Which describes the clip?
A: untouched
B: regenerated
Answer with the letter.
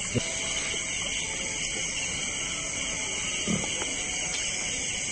A